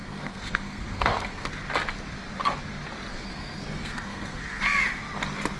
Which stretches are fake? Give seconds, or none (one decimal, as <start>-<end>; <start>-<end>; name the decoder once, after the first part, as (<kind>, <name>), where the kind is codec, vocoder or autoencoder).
0.0-1.5 (codec, SNAC); 3.1-4.6